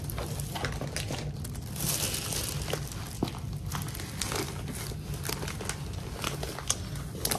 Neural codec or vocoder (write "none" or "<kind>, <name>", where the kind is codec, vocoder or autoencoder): none